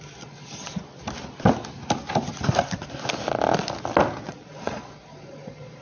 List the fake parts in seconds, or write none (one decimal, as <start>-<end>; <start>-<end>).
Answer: 0.0-0.8; 4.3-5.8